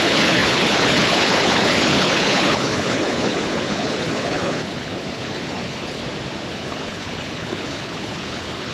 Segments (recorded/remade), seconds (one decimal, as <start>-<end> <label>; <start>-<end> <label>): 0.0-6.0 remade; 6.0-6.5 recorded; 6.5-8.7 remade